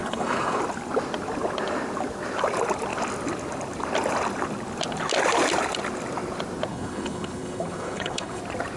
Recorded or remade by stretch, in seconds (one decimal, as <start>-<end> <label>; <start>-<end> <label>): 0.0-0.6 remade; 0.6-6.7 recorded; 6.7-8.4 remade; 8.4-8.8 recorded